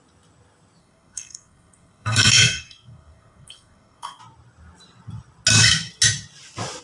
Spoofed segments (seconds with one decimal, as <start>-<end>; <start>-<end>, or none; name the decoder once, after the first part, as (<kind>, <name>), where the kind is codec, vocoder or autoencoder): 0.8-4.2 (codec, SNAC)